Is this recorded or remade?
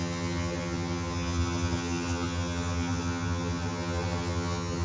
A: remade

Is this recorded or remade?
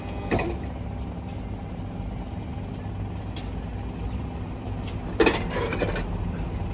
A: recorded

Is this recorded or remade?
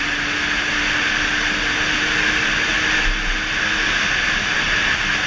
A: recorded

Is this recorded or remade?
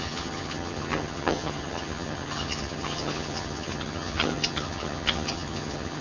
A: remade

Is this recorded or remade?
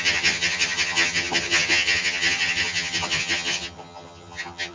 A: remade